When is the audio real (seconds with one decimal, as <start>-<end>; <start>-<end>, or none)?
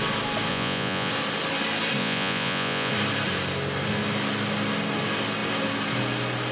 0.0-0.5; 1.1-2.0; 2.9-6.5